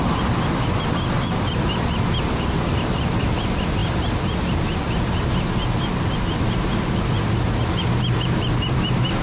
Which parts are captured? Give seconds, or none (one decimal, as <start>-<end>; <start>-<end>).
0.0-9.2